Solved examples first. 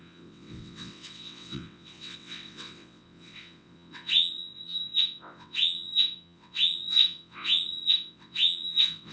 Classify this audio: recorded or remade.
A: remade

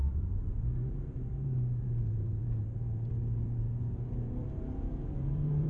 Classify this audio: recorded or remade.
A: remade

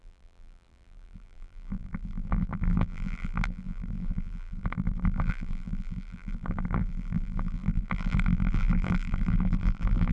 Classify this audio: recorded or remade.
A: remade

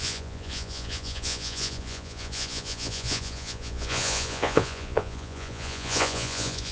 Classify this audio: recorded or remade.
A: remade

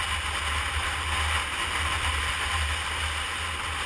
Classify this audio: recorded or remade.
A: recorded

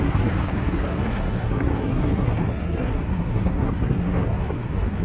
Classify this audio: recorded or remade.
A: remade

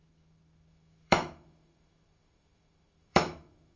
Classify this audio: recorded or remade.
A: remade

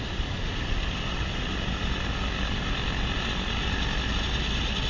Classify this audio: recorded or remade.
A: recorded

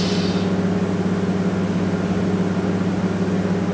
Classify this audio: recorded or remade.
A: recorded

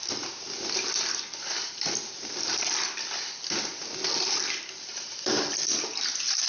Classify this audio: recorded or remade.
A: recorded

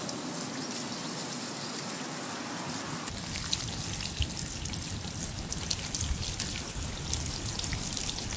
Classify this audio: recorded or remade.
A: recorded